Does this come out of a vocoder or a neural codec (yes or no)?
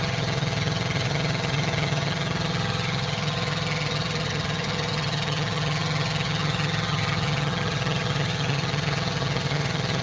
yes